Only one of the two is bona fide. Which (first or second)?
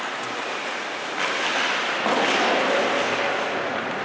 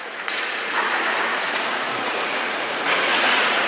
first